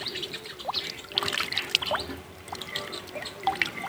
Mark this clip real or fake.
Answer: real